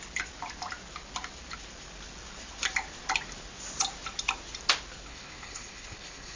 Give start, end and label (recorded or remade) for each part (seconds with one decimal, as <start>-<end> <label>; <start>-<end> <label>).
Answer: 0.0-5.1 recorded; 5.1-6.4 remade